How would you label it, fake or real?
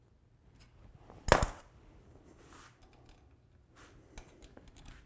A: real